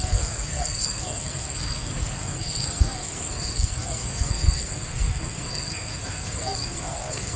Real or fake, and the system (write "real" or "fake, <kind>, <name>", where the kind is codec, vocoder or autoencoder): fake, codec, SNAC